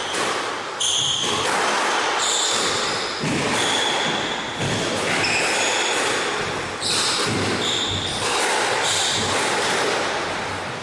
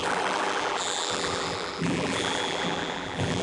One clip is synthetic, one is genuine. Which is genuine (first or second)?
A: first